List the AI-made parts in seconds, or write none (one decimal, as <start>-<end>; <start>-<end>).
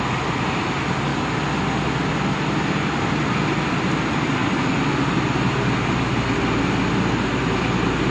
none